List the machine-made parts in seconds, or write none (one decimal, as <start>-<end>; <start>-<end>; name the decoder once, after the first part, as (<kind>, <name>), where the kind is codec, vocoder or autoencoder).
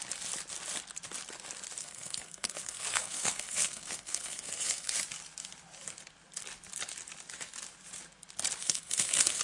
1.8-4.9 (codec, SNAC); 8.6-9.4